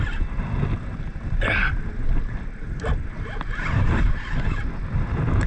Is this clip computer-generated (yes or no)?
no